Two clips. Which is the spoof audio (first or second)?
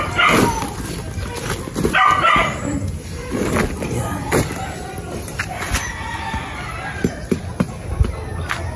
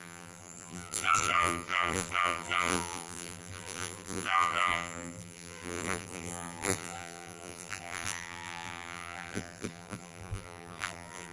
second